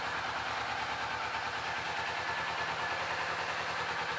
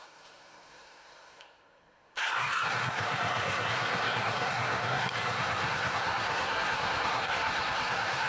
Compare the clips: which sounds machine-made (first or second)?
second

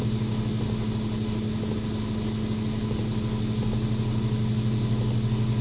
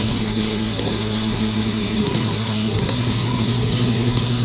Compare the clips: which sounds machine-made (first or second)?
second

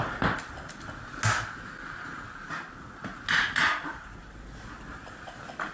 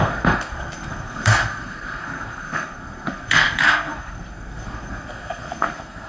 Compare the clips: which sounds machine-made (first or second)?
second